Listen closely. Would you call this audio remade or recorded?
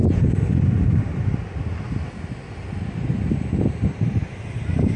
recorded